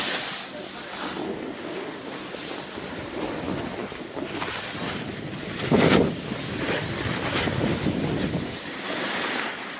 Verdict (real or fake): real